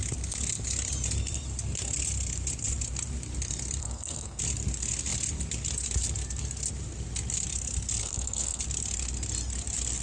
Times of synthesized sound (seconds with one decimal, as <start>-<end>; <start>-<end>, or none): 3.8-4.4; 8.0-8.6